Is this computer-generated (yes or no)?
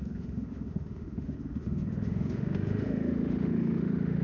yes